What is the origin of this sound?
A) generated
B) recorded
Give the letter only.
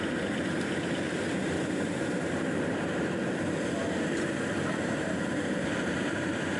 A